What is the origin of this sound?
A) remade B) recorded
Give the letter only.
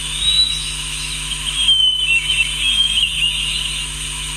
A